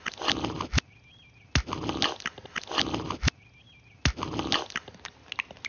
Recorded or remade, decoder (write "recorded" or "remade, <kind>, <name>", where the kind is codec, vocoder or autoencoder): recorded